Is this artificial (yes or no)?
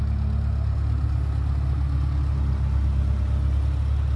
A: no